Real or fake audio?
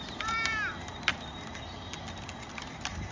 real